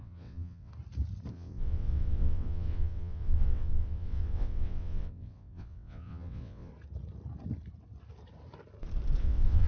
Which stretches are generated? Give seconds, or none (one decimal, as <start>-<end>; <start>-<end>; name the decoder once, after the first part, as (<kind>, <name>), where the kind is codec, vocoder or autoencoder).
0.0-0.7 (vocoder, WaveNeXt); 1.3-6.7; 9.2-9.7